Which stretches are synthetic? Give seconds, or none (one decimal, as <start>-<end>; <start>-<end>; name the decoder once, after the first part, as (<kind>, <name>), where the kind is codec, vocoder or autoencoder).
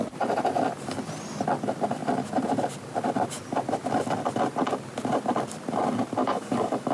6.2-6.9 (codec, DAC)